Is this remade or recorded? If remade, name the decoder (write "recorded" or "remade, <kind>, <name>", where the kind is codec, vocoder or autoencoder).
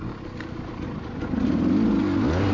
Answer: recorded